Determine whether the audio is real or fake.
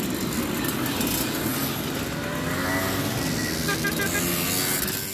real